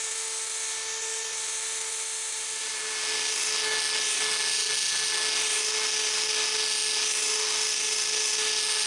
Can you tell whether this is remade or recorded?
recorded